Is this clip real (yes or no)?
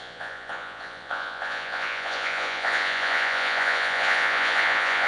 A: no